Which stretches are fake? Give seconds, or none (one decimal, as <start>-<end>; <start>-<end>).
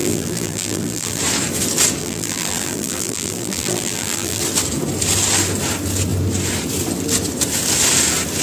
0.0-1.2; 2.0-4.4